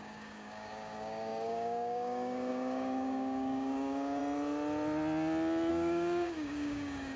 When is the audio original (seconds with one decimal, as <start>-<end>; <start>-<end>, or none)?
4.2-5.7